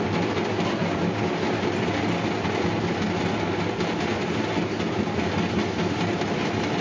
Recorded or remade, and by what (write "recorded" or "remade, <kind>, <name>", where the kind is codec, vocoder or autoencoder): recorded